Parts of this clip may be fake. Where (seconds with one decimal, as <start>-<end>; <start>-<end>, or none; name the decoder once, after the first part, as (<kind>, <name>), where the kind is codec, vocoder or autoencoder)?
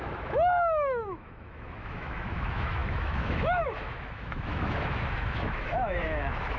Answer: 0.0-6.6 (autoencoder, DAC-VAE)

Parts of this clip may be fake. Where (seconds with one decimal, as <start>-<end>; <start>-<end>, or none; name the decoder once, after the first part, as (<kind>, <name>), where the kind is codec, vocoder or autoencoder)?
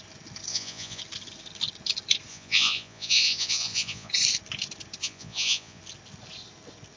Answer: 0.5-1.0 (vocoder, Vocos); 2.3-4.1; 5.0-5.8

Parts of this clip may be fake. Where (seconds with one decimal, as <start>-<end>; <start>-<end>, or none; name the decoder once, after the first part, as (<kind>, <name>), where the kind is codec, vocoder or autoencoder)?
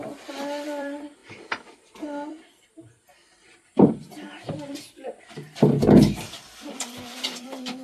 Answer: 0.0-7.8 (vocoder, BigVGAN v2)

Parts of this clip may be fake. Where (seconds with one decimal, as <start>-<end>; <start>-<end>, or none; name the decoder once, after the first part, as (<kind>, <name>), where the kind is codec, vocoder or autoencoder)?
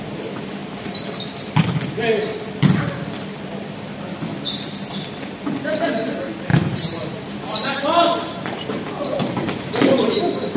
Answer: 0.6-1.2 (vocoder, BigVGAN v2); 6.5-9.9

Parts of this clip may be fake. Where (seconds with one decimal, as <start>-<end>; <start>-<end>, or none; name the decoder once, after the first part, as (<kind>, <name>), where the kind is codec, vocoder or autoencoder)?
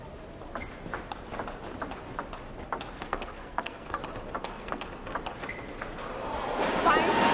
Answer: 2.9-4.0 (codec, SNAC); 4.4-4.9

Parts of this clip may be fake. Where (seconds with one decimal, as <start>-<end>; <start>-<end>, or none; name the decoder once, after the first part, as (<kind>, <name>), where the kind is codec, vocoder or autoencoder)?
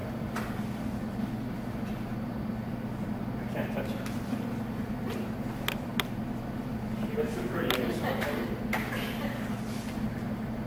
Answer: none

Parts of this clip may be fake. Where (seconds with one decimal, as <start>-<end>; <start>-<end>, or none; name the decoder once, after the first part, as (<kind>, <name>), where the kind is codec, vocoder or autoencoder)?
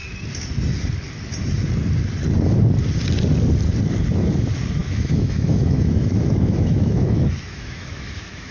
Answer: 4.8-8.5 (autoencoder, DAC-VAE)